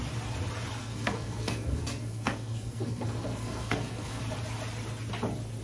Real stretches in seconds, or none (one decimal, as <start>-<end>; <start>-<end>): 0.0-0.8; 4.2-5.6